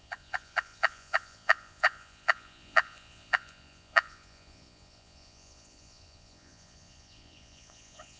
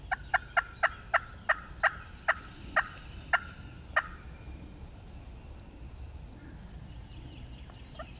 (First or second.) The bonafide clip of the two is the second